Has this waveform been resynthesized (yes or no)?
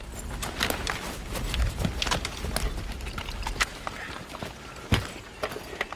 no